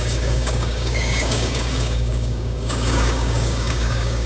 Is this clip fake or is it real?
fake